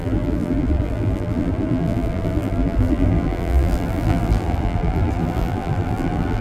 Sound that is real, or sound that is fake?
fake